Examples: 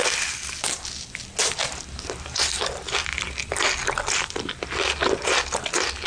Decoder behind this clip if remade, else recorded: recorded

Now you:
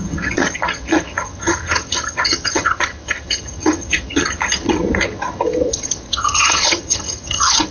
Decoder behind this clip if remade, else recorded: remade, vocoder, HiFi-GAN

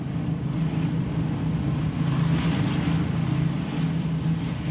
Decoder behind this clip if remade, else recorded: recorded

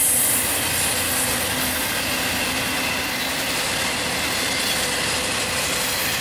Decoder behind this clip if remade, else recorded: recorded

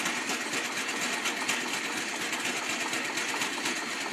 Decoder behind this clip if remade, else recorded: recorded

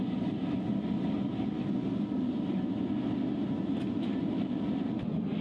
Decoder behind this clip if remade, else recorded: recorded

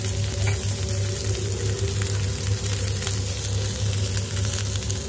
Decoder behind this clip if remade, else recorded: recorded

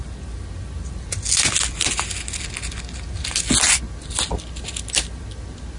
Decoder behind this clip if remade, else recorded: recorded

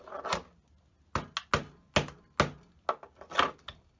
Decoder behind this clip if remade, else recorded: recorded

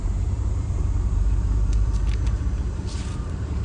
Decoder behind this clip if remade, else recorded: remade, vocoder, BigVGAN v2